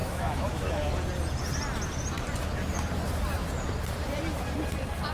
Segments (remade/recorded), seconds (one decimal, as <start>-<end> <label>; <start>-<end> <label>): 0.0-0.9 remade; 0.9-5.1 recorded